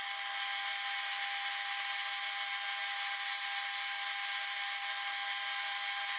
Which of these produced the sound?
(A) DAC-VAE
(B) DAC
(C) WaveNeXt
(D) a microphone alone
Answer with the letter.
D